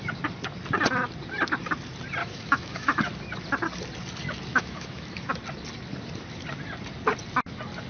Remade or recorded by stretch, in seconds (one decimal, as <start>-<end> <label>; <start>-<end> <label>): 0.0-2.2 recorded; 2.2-3.0 remade; 3.0-4.5 recorded; 4.5-5.3 remade; 5.3-7.9 recorded

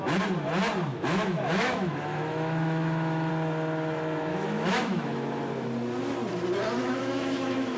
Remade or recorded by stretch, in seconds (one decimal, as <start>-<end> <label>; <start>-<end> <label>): 0.0-0.9 recorded; 0.9-3.3 remade; 3.3-4.3 recorded; 4.3-5.2 remade; 5.2-6.8 recorded; 6.8-7.8 remade